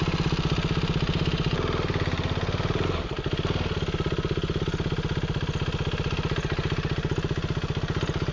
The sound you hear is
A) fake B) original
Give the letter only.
B